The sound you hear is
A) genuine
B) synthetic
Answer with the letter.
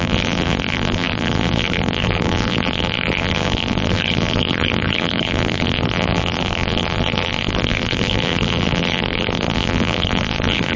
B